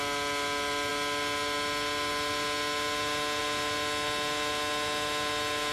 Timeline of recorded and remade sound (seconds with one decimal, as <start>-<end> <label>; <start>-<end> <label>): 0.0-5.7 recorded